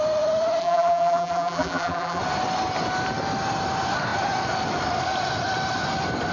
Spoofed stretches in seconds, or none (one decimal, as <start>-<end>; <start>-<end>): 0.6-2.2